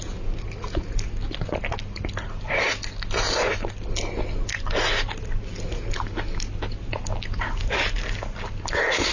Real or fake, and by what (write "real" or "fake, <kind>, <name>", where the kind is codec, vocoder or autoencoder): real